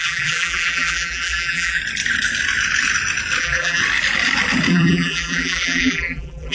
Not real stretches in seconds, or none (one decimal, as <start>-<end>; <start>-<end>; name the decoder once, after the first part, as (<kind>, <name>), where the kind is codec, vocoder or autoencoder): 0.0-1.8 (vocoder, BigVGAN v2); 3.4-3.8; 4.7-6.5